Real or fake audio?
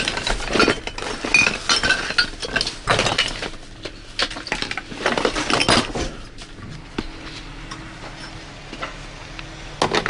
real